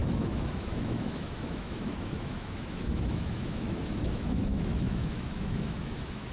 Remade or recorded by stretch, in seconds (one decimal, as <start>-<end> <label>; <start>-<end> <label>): 0.0-6.3 remade